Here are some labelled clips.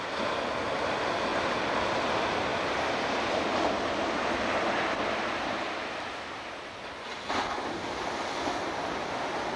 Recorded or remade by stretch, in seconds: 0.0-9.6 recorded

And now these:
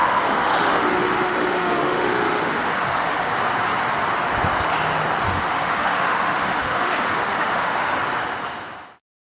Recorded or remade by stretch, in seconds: 0.0-3.3 remade; 3.3-5.3 recorded; 5.3-8.0 remade; 8.0-9.4 recorded

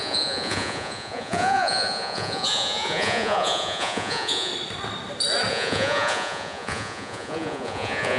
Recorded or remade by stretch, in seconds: 0.0-4.5 remade; 4.5-5.5 recorded; 5.5-8.2 remade

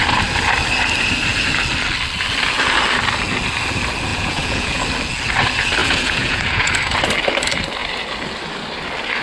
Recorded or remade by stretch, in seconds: 0.0-4.1 recorded; 4.1-4.8 remade; 4.8-5.8 recorded; 5.8-6.7 remade; 6.7-9.2 recorded

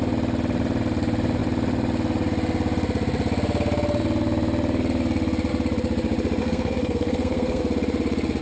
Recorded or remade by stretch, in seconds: 0.0-6.4 recorded; 6.4-7.6 remade; 7.6-8.4 recorded